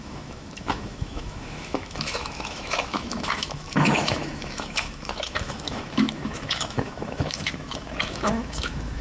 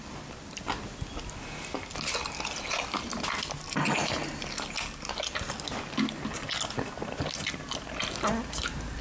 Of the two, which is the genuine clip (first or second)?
second